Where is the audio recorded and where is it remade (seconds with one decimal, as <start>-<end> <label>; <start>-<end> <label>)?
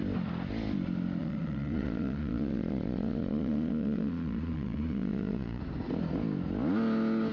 0.0-1.2 recorded; 1.2-5.6 remade; 5.6-7.3 recorded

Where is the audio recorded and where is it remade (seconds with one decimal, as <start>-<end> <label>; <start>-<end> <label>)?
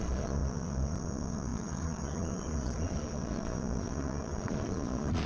0.0-5.3 remade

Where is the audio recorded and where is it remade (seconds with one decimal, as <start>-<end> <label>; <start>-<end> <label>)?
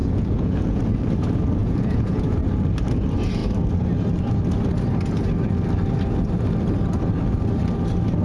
0.0-0.8 remade; 0.8-1.6 recorded; 1.6-2.4 remade; 2.4-8.2 recorded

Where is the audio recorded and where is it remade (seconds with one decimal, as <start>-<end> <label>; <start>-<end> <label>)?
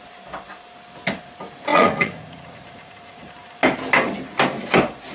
0.0-1.7 recorded; 1.7-3.3 remade; 3.3-5.1 recorded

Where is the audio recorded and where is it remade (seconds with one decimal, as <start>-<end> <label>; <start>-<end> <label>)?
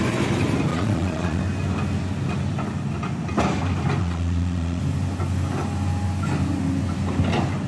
0.0-0.7 recorded; 0.7-1.4 remade; 1.4-4.0 recorded; 4.0-4.8 remade; 4.8-7.7 recorded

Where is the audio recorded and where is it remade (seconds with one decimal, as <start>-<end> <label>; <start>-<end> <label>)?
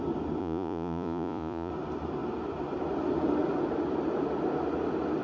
0.0-0.4 recorded; 0.4-1.7 remade; 1.7-5.2 recorded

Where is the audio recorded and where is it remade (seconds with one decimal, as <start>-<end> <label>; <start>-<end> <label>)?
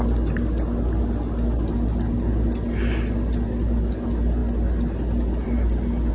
0.0-6.1 recorded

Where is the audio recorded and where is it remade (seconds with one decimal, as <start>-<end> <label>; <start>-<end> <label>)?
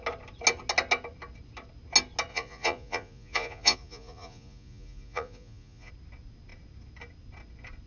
0.0-2.3 recorded; 2.3-5.9 remade; 5.9-7.9 recorded